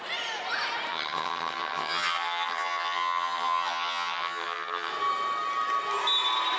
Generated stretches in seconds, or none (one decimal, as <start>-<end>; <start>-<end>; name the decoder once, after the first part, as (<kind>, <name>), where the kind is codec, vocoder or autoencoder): 0.9-4.9 (vocoder, HiFi-GAN)

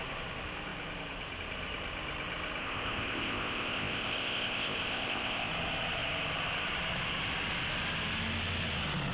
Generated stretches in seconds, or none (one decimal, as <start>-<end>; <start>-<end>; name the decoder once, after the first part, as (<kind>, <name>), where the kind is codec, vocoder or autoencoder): 2.6-5.5 (codec, ZipCodec)